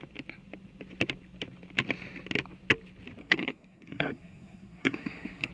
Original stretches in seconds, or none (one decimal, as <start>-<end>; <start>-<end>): 0.0-3.2